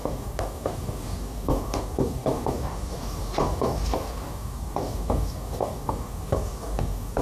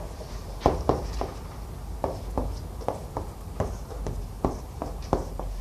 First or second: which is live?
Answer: second